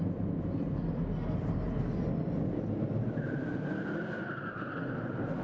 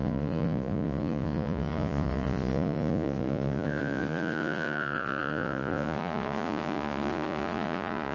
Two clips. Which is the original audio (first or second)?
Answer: first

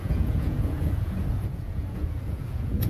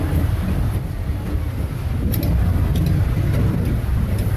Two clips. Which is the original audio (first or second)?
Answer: second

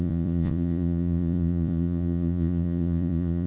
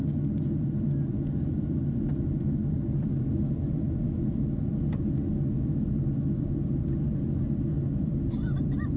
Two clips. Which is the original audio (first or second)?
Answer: second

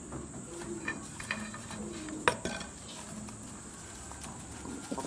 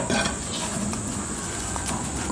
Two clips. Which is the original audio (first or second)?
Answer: first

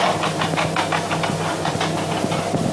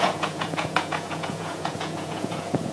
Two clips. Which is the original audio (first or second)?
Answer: first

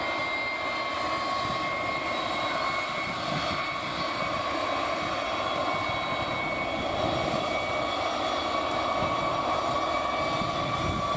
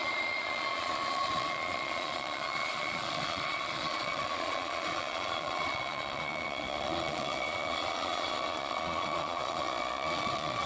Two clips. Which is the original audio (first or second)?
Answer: first